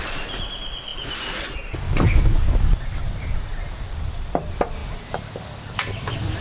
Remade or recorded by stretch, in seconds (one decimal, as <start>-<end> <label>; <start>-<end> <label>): 0.0-0.9 recorded; 0.9-4.3 remade; 4.3-4.8 recorded; 4.8-5.3 remade; 5.3-6.4 recorded